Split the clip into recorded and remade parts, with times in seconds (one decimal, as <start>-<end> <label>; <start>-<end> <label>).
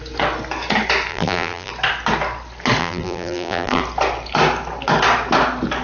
0.0-1.1 recorded; 1.1-1.7 remade; 1.7-2.8 recorded; 2.8-3.8 remade; 3.8-5.8 recorded